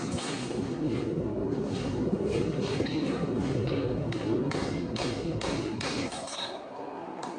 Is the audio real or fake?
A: fake